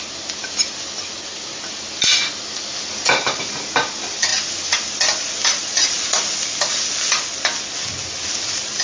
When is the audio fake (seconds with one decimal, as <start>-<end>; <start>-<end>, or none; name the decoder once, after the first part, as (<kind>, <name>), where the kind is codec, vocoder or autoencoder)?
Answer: none